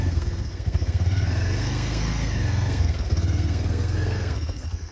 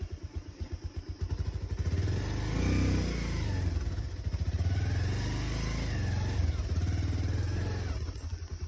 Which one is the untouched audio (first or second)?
second